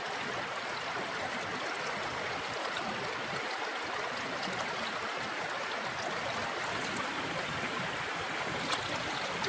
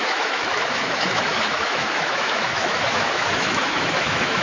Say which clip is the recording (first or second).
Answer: first